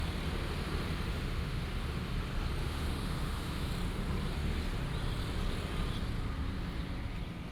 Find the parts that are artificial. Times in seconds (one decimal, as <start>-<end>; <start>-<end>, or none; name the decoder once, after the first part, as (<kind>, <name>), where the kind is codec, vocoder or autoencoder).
1.1-1.6 (autoencoder, DAC-VAE); 2.6-3.7